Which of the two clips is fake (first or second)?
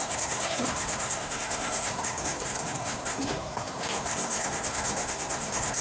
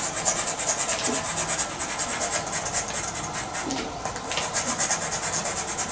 first